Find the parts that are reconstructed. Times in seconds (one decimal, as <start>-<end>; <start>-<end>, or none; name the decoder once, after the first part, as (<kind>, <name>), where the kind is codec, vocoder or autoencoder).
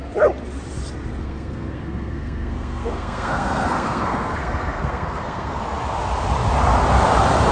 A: 1.2-5.6 (codec, SNAC)